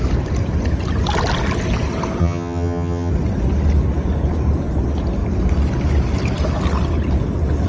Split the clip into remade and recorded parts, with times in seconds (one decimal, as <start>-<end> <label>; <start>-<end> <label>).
0.0-2.2 recorded; 2.2-3.1 remade; 3.1-7.7 recorded